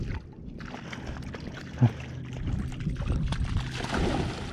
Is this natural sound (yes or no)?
yes